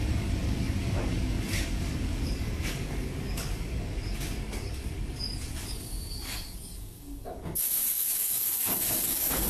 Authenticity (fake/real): fake